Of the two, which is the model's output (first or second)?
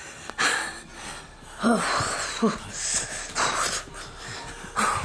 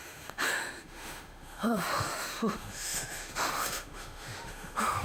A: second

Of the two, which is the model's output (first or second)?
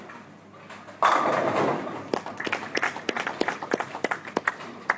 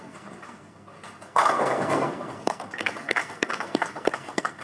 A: second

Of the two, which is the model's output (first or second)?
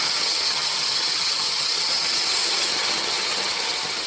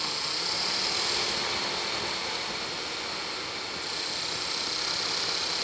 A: first